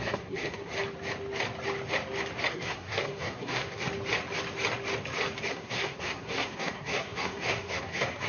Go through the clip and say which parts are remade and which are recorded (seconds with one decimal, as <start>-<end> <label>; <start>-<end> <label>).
0.0-0.7 remade; 0.7-2.5 recorded; 2.5-3.8 remade; 3.8-5.5 recorded; 5.5-8.3 remade